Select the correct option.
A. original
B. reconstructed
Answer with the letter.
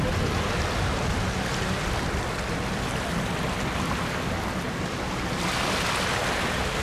A